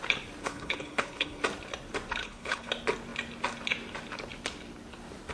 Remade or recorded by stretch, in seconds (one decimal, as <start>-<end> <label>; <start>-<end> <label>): 0.0-0.4 recorded; 0.4-1.4 remade; 1.4-2.2 recorded; 2.2-2.7 remade; 2.7-5.3 recorded